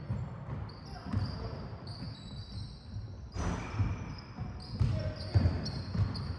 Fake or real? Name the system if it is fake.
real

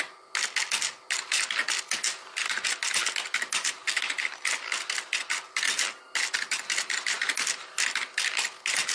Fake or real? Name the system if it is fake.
real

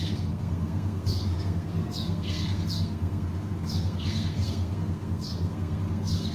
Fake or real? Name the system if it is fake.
fake, codec, SNAC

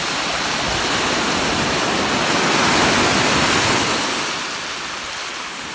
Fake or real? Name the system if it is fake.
real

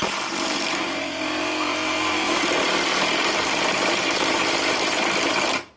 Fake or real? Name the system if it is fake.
fake, vocoder, BigVGAN v2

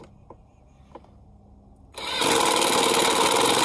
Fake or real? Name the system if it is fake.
real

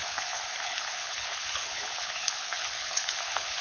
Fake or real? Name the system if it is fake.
fake, codec, HILCodec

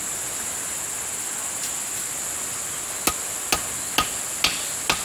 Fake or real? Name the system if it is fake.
real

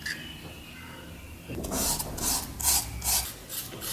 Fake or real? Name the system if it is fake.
real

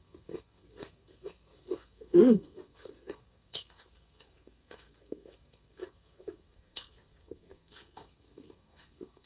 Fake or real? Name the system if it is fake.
fake, codec, SNAC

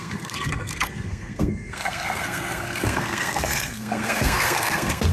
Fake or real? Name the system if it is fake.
fake, codec, SNAC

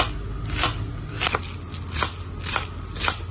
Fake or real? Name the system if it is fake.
real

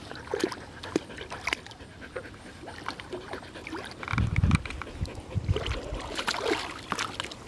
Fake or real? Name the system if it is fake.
real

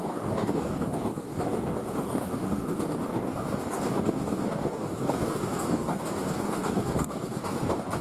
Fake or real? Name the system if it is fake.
fake, codec, DAC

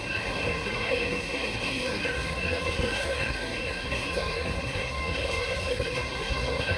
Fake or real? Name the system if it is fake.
fake, codec, SNAC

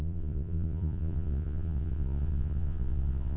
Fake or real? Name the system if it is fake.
fake, vocoder, Vocos